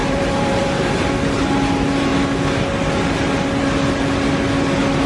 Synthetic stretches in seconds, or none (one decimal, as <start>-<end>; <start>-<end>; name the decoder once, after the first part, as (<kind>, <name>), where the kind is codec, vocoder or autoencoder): 0.0-1.1 (vocoder, BigVGAN v2)